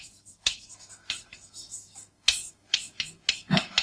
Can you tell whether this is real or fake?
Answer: fake